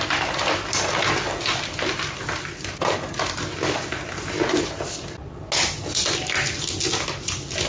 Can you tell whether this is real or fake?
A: real